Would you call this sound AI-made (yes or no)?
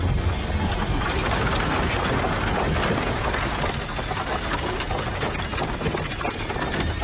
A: no